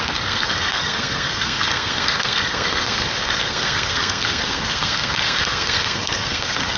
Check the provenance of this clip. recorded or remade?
remade